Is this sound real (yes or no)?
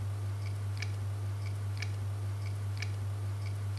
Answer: yes